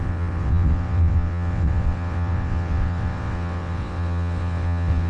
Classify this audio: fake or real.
fake